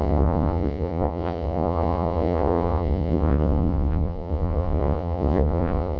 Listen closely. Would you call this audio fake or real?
fake